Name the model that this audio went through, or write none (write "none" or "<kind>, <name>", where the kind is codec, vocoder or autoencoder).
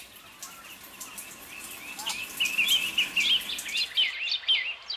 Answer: none